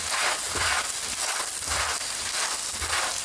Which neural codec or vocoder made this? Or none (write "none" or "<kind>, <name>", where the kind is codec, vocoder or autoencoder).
none